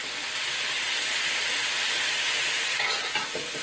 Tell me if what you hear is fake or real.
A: real